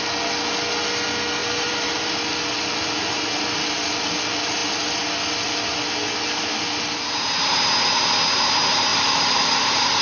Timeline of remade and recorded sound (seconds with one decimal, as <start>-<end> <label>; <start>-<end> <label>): 0.0-1.4 recorded; 1.4-2.2 remade; 2.2-8.9 recorded; 8.9-10.0 remade